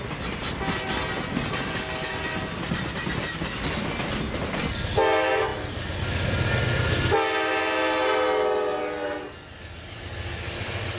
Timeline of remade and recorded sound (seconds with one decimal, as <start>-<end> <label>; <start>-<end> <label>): 0.0-11.0 recorded